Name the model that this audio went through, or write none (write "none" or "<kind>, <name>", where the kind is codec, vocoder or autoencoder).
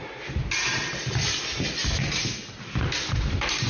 none